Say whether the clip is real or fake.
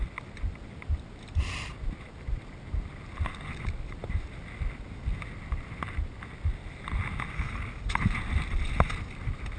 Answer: real